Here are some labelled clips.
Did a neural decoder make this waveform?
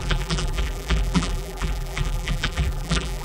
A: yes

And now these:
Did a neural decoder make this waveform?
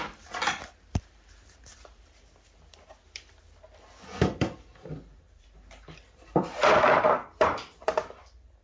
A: yes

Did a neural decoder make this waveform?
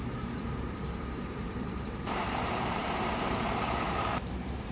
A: yes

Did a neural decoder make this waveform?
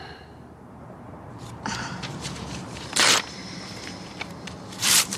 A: yes